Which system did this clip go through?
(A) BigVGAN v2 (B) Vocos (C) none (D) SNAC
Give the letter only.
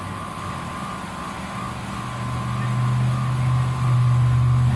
C